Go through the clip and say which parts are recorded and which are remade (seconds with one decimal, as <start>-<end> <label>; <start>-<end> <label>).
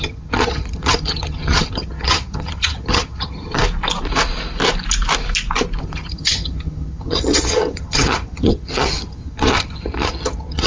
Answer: 0.0-3.6 remade; 3.6-5.8 recorded; 5.8-10.7 remade